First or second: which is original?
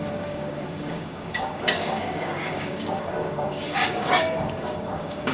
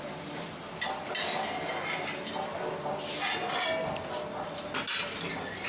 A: second